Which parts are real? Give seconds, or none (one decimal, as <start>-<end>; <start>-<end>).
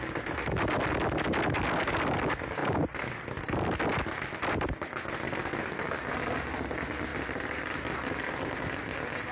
0.0-2.6; 3.4-3.9; 4.7-7.1; 8.4-9.3